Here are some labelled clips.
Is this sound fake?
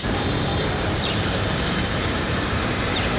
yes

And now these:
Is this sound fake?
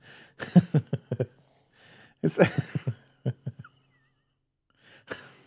no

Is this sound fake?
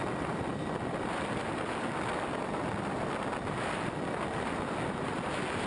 yes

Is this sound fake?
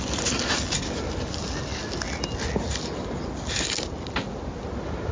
no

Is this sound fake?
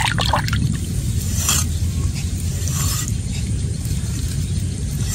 no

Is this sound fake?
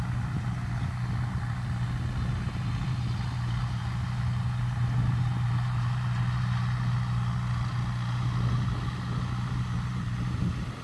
no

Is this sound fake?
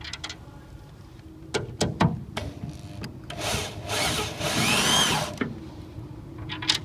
no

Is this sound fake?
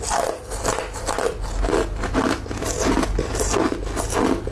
no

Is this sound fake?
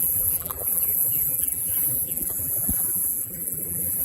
yes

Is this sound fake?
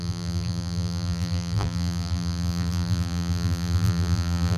yes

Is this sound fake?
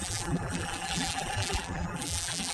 yes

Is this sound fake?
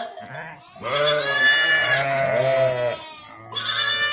no